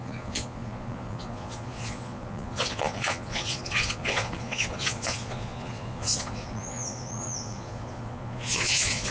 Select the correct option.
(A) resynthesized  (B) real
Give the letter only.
A